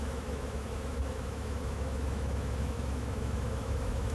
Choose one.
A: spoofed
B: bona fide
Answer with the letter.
A